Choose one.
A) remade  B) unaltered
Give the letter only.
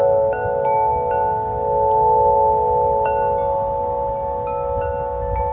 B